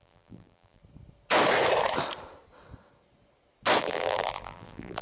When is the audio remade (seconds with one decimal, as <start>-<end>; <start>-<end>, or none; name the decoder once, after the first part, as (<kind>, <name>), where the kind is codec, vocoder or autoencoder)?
0.0-0.8 (vocoder, BigVGAN v2); 3.8-5.0